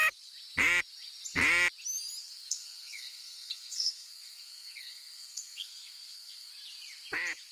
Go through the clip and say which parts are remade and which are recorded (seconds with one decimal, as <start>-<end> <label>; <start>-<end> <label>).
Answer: 0.0-2.2 recorded; 2.2-6.5 remade; 6.5-7.5 recorded